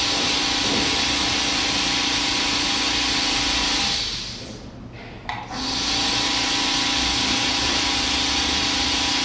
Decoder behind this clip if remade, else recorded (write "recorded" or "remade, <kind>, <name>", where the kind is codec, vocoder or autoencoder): recorded